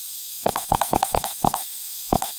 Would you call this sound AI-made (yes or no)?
yes